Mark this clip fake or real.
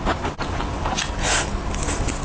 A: real